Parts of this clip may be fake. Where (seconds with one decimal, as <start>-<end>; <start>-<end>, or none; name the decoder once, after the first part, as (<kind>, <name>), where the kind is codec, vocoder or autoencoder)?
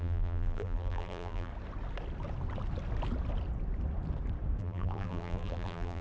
0.0-1.5 (vocoder, BigVGAN v2); 4.6-6.0